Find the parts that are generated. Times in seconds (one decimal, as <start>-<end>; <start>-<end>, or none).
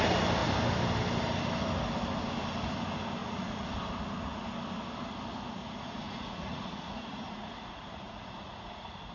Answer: 3.2-3.7; 5.6-9.1